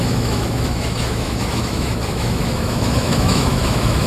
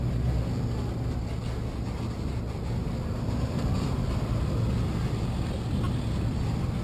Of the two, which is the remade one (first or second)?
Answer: first